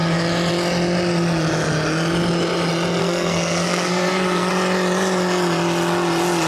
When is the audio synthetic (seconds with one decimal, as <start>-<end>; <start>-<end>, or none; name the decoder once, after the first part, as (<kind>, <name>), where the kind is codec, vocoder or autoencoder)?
3.0-4.5 (codec, SNAC)